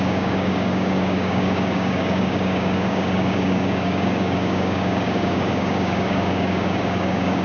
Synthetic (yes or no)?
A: yes